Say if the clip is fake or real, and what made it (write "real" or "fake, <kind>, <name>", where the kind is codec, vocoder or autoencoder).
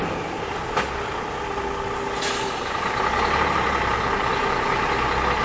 real